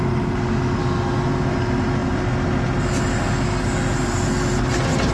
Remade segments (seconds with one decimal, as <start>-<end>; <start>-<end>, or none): none